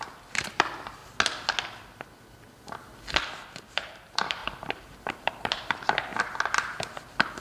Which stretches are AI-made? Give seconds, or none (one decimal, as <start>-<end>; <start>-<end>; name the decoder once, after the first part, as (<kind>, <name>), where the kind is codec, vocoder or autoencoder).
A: 0.0-1.0 (vocoder, BigVGAN v2); 3.7-6.1